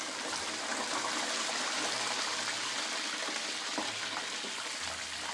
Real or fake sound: real